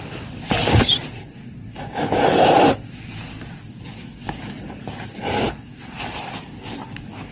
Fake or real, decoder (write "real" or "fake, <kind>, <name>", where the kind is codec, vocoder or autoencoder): real